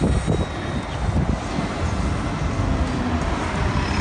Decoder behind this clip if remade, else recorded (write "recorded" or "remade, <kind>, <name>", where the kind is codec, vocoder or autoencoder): recorded